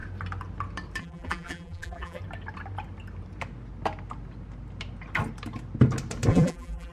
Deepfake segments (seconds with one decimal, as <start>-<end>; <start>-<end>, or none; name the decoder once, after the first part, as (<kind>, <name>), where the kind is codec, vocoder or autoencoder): 1.0-2.2 (vocoder, BigVGAN v2); 6.3-6.9